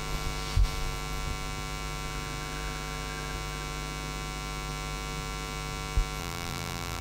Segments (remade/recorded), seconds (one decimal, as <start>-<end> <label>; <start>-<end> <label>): 0.0-6.2 recorded; 6.2-7.0 remade